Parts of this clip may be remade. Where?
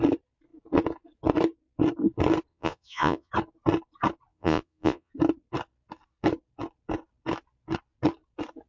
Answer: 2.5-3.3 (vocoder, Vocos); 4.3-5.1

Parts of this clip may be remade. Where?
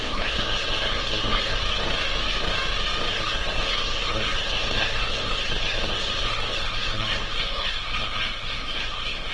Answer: 0.0-1.6 (codec, SNAC); 3.1-9.3